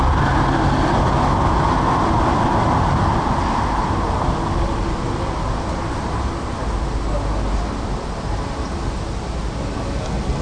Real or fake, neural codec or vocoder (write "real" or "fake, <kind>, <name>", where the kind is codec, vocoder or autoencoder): real